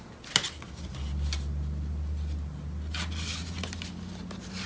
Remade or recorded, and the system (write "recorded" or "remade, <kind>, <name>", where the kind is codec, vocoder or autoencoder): recorded